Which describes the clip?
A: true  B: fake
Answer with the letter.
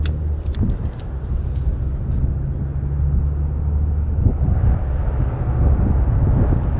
A